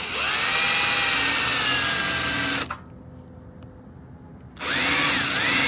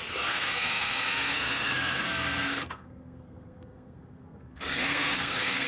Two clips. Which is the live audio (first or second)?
first